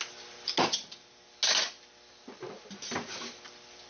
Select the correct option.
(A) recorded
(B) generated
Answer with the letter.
A